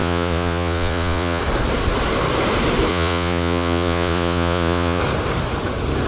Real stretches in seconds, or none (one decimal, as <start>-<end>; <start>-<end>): 1.4-2.9; 5.0-6.1